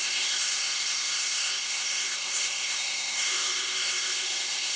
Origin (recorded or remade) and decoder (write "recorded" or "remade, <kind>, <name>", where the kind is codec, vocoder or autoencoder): remade, codec, ZipCodec